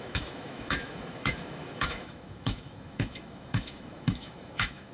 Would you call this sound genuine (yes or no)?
no